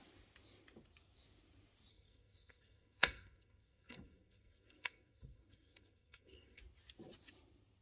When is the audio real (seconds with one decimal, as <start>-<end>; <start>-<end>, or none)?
0.0-1.9; 6.6-7.8